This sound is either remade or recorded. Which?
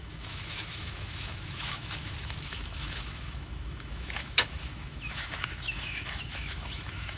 remade